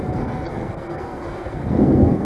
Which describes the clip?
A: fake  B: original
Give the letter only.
A